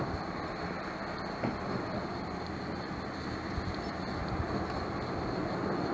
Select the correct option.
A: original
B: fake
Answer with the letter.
A